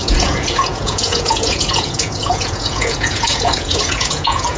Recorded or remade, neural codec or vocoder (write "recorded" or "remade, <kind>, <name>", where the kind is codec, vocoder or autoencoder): remade, vocoder, Vocos